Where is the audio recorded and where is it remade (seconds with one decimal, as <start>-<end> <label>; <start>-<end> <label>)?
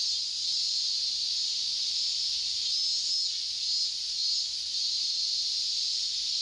0.0-6.4 recorded